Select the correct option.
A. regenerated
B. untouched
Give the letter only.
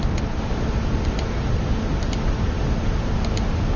B